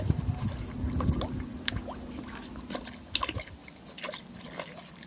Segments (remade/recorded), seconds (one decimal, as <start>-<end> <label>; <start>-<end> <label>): 0.0-5.1 recorded